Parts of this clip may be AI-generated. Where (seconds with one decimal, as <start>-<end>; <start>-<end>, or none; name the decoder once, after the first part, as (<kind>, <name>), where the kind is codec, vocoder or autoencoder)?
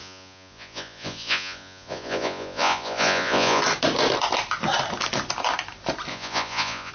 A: 0.0-3.6 (vocoder, Vocos); 6.1-6.9